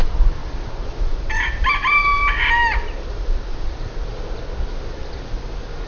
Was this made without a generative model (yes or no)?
yes